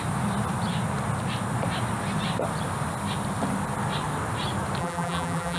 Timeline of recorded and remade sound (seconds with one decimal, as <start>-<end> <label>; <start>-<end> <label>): 0.0-4.8 recorded; 4.8-5.6 remade